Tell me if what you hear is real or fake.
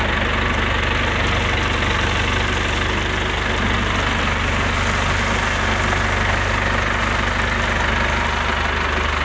real